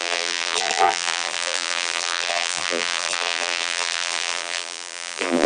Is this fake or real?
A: fake